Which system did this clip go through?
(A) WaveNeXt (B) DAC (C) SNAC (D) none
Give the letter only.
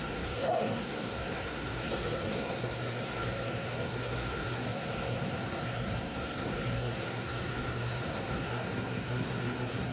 C